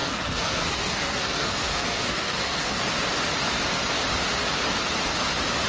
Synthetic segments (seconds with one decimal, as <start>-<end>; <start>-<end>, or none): 0.0-2.8